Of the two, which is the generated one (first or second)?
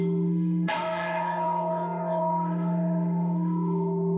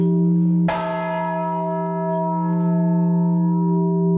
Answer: first